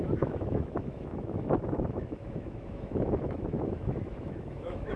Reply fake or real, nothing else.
fake